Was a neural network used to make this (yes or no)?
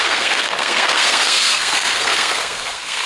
yes